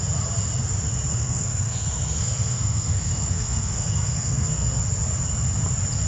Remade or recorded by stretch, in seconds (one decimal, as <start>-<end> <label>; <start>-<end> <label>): 0.0-1.1 recorded; 1.1-4.8 remade; 4.8-6.1 recorded